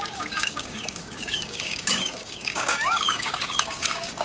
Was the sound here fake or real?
fake